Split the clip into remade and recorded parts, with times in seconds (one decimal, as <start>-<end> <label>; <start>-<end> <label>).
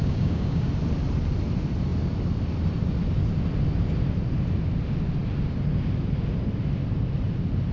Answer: 0.0-0.7 remade; 0.7-7.7 recorded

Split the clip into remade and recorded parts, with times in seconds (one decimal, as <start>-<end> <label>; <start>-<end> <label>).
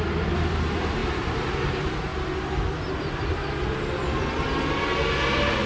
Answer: 0.0-2.1 remade; 2.1-2.8 recorded; 2.8-3.4 remade; 3.4-5.7 recorded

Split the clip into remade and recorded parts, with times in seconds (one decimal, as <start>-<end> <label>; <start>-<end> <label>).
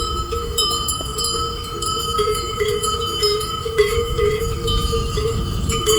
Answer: 0.0-6.0 remade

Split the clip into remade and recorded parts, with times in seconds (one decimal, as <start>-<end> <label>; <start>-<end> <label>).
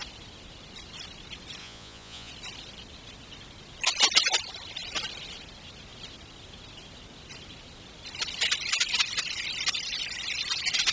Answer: 0.0-1.6 recorded; 1.6-2.3 remade; 2.3-10.9 recorded